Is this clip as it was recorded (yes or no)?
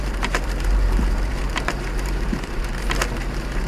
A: no